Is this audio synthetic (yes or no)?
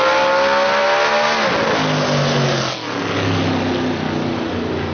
no